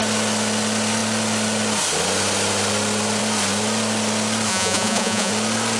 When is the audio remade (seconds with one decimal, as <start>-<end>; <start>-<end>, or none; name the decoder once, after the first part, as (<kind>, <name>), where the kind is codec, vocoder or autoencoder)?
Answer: 4.5-5.3 (vocoder, Vocos)